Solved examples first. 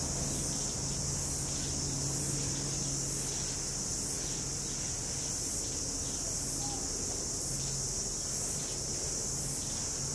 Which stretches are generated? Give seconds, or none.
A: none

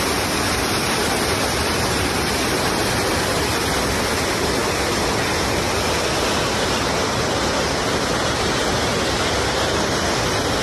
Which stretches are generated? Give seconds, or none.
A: none

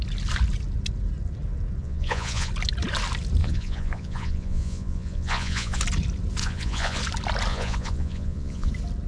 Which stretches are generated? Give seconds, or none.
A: 1.8-2.5 (vocoder, Vocos); 3.4-5.8; 6.4-7.0; 7.5-8.7

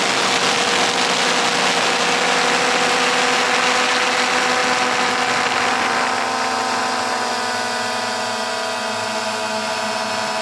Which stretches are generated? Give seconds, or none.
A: none

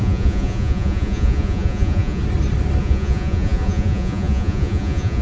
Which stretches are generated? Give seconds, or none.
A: 0.0-2.2 (vocoder, Vocos); 2.8-5.2

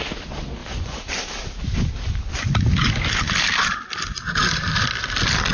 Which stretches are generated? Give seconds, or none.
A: 0.6-1.1 (vocoder, Vocos)